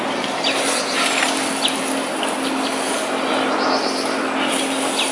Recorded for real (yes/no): yes